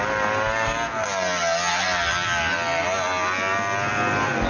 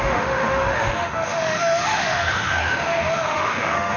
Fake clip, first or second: second